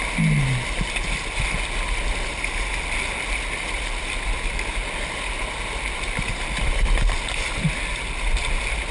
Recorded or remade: recorded